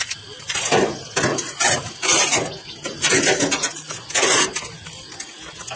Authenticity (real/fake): real